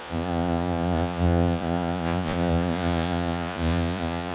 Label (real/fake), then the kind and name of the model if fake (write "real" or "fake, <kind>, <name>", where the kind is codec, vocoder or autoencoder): fake, vocoder, Vocos